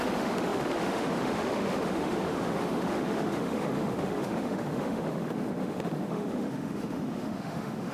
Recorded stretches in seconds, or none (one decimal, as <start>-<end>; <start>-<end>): none